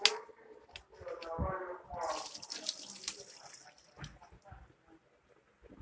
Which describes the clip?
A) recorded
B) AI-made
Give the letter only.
A